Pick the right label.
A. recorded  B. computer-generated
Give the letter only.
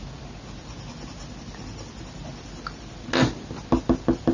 A